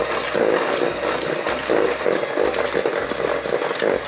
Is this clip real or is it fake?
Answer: real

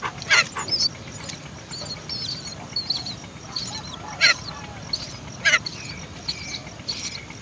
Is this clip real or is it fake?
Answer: real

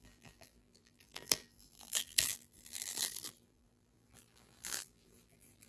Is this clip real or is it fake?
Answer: fake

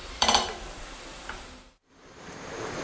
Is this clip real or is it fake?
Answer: fake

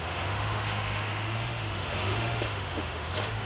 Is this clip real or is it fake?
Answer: fake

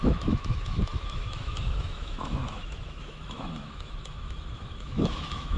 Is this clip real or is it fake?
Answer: fake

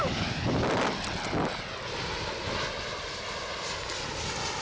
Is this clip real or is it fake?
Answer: real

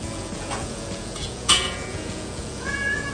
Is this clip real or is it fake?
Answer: fake